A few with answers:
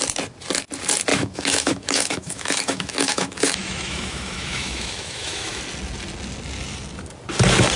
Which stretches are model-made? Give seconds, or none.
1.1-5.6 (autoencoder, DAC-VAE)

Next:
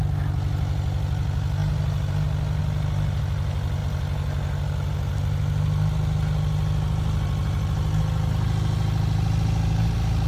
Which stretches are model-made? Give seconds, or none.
none